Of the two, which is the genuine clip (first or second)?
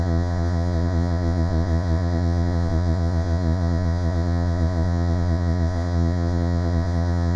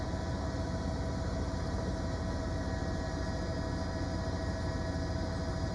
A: second